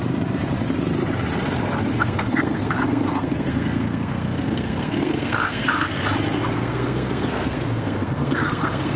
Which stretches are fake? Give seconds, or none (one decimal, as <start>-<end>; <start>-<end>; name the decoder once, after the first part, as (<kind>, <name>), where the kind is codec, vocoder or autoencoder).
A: 1.9-6.0 (codec, SNAC); 6.4-9.0